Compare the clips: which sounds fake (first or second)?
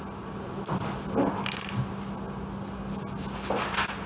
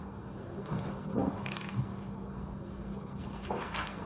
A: second